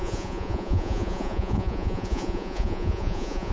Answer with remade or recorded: remade